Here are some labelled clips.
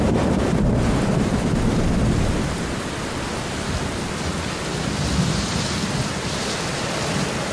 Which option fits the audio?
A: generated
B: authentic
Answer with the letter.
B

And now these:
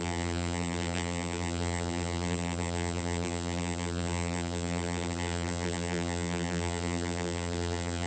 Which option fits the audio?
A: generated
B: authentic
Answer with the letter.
A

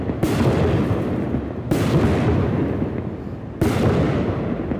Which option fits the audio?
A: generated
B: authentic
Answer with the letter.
B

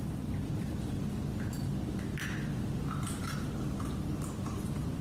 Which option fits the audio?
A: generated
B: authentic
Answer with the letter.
B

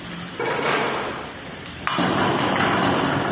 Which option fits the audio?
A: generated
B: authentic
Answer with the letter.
A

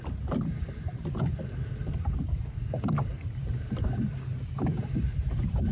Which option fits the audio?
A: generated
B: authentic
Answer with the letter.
A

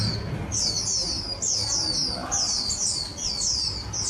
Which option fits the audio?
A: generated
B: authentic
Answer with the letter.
B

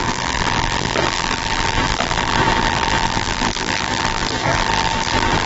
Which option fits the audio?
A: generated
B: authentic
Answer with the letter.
A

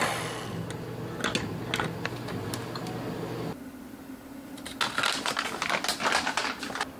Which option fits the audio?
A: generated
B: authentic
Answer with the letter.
B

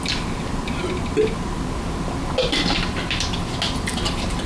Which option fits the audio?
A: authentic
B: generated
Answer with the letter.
A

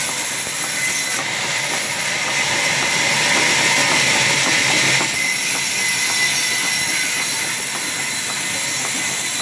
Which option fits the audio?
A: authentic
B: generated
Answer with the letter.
A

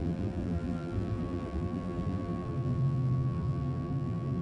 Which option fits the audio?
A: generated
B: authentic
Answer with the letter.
A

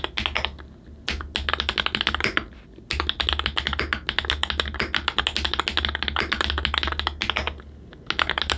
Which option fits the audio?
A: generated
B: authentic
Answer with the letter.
B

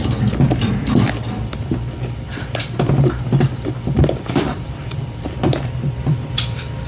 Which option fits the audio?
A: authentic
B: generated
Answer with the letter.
B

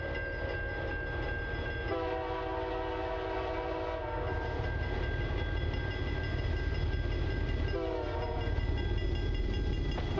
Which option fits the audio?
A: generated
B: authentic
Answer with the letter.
B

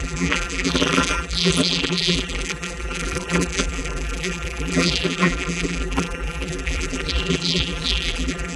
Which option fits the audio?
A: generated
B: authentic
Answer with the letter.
A